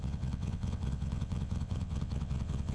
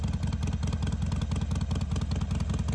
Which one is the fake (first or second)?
first